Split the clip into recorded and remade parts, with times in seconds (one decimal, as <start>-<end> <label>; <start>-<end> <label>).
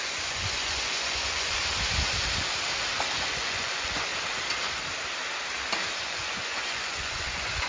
0.0-1.6 remade; 1.6-3.3 recorded; 3.3-4.1 remade; 4.1-6.0 recorded; 6.0-7.7 remade